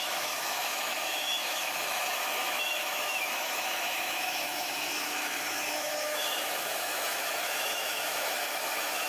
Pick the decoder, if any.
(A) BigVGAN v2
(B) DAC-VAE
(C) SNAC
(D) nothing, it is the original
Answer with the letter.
B